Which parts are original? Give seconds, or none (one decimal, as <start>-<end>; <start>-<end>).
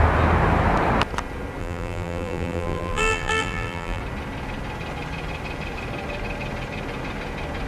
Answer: 0.0-1.6; 4.0-7.7